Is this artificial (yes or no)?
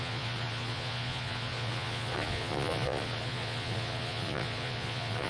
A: yes